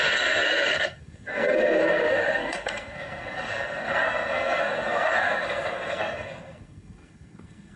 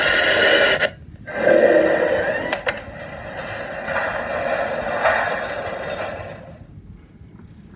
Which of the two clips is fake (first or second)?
first